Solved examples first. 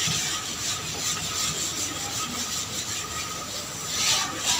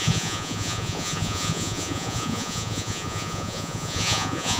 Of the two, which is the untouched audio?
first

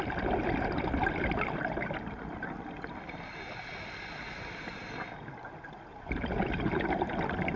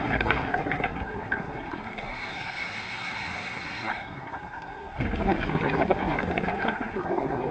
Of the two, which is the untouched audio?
first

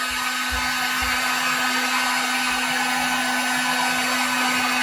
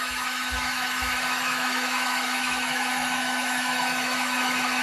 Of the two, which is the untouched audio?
first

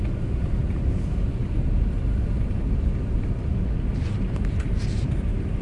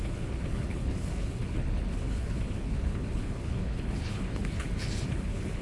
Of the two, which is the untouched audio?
first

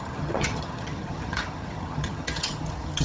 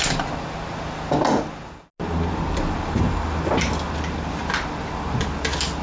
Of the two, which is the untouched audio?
second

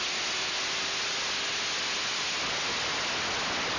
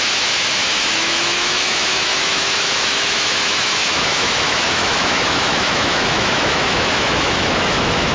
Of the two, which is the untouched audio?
first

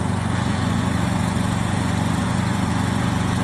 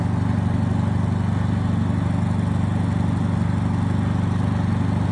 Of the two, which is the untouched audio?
second